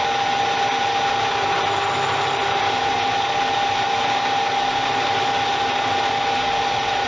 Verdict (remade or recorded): recorded